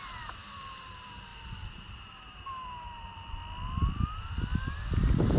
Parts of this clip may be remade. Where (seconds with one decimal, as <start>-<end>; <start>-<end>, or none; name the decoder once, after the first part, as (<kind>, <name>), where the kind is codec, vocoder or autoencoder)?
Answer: 0.0-3.4 (vocoder, BigVGAN v2); 4.7-5.4